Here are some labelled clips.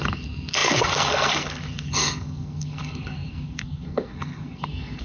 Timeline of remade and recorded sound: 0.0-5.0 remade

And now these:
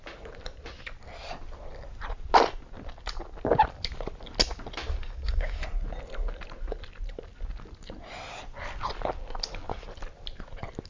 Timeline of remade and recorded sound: 0.0-5.0 recorded; 5.0-5.6 remade; 5.6-10.9 recorded

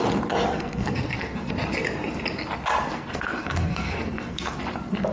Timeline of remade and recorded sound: 0.0-0.5 recorded; 0.5-1.5 remade; 1.5-2.8 recorded; 2.8-4.6 remade; 4.6-5.1 recorded

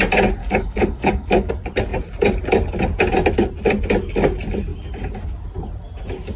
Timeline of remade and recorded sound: 0.0-0.4 recorded; 0.4-1.5 remade; 1.5-6.4 recorded

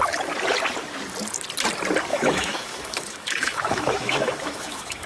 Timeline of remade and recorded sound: 0.0-2.1 recorded; 2.1-5.1 remade